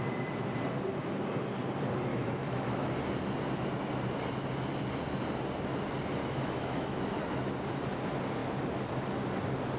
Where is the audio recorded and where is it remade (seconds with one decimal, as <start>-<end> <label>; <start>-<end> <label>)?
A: 0.0-2.1 recorded; 2.1-2.9 remade; 2.9-6.2 recorded; 6.2-7.0 remade; 7.0-9.8 recorded